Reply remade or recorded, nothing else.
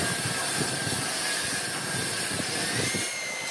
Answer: recorded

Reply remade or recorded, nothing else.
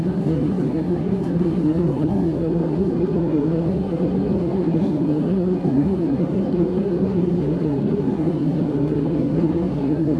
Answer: remade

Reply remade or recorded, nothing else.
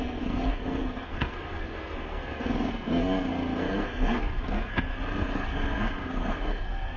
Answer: remade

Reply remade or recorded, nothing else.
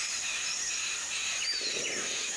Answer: recorded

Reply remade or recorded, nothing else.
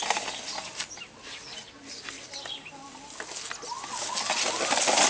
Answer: recorded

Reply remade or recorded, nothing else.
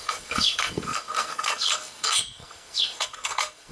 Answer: remade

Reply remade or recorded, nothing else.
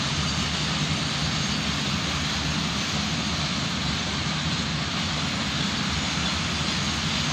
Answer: recorded